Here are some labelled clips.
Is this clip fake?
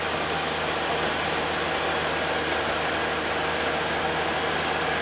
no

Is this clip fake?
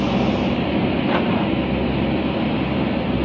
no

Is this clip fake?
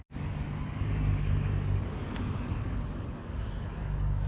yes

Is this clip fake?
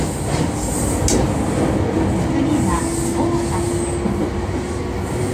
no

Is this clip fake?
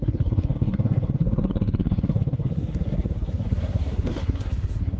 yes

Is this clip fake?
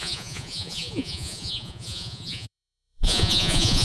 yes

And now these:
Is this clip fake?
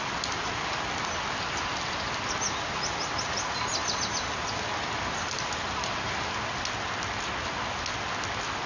no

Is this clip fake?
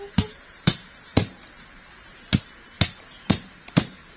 no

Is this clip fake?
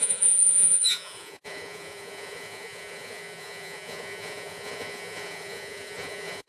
yes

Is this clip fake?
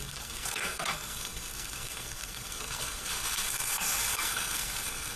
yes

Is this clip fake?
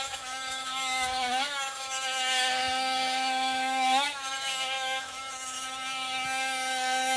yes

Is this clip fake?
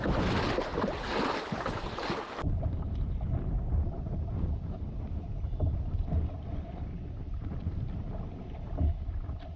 no